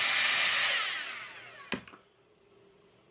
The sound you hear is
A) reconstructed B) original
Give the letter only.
B